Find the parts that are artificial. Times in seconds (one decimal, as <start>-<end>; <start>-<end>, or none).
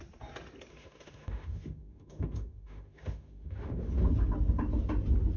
0.7-3.9